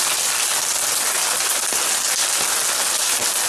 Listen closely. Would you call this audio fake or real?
real